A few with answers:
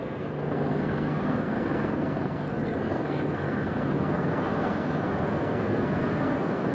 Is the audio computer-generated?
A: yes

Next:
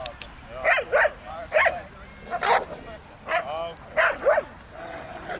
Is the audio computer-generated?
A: no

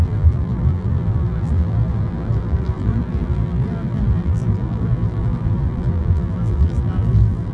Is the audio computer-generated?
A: yes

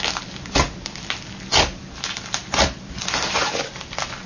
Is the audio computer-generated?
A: no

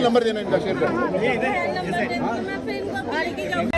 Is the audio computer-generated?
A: no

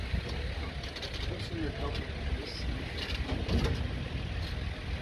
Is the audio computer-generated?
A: no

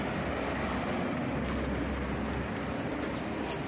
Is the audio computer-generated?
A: no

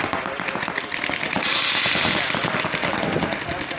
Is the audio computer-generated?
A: no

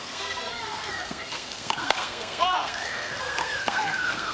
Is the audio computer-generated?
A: yes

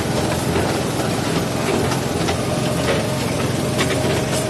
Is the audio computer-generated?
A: no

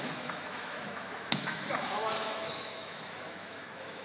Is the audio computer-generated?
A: yes